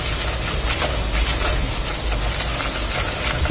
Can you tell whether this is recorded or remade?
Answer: recorded